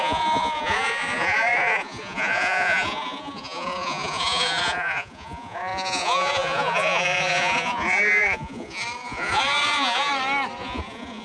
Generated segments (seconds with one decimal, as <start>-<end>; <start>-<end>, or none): 0.0-10.1; 10.6-11.2